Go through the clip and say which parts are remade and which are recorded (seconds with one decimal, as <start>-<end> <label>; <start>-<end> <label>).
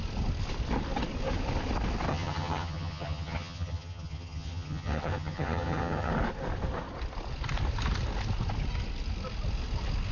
0.0-2.1 recorded; 2.1-6.1 remade; 6.1-10.1 recorded